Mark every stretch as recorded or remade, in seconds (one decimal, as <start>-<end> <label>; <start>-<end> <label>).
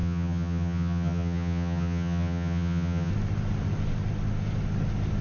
0.0-3.1 remade; 3.1-5.2 recorded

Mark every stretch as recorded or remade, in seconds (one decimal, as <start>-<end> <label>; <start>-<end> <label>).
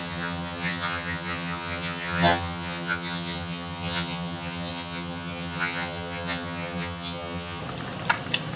0.0-7.6 remade; 7.6-8.6 recorded